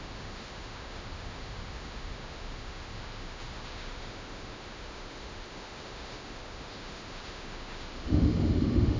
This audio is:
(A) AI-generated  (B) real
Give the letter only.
A